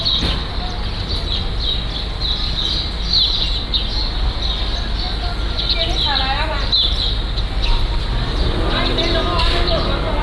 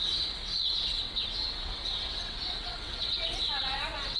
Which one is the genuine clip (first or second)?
first